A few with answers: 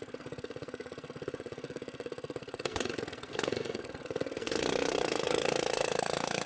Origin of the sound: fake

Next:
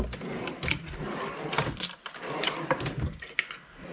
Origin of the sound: real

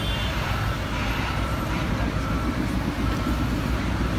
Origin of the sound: fake